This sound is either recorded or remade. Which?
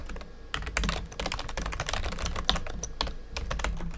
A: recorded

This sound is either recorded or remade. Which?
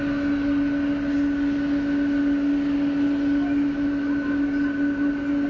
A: recorded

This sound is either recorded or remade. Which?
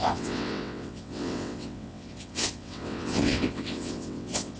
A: remade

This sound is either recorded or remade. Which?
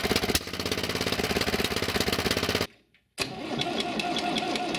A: recorded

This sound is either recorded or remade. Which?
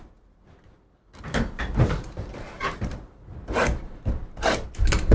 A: recorded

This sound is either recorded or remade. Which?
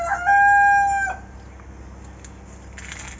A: recorded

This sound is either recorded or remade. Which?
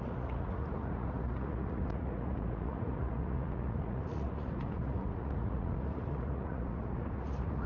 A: remade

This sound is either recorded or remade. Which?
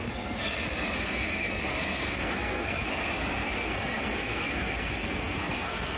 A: remade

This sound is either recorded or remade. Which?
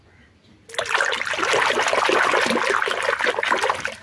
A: recorded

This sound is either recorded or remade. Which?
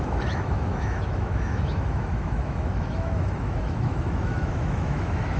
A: remade